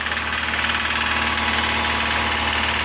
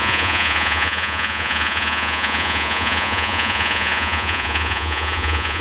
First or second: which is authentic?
first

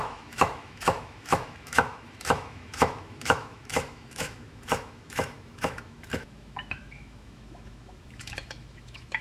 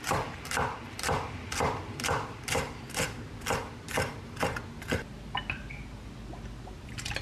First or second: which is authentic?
second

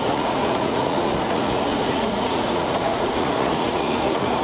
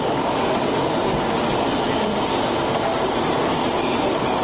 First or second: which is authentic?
second